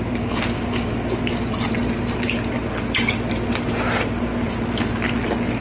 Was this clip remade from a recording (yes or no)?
no